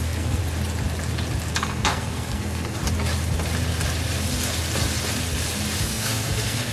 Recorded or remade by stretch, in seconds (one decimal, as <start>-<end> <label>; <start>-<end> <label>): 0.0-0.4 remade; 0.4-1.5 recorded; 1.5-2.8 remade; 2.8-5.8 recorded; 5.8-6.7 remade